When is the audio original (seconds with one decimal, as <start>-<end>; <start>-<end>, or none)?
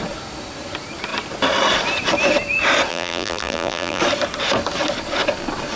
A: 0.0-2.9; 4.0-5.8